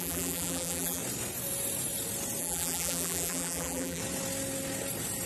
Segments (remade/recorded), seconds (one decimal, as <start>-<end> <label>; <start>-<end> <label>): 0.0-1.0 remade; 1.0-2.4 recorded; 2.4-4.0 remade; 4.0-5.3 recorded